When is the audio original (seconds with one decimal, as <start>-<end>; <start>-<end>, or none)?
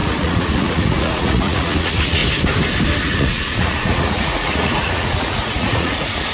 2.2-3.0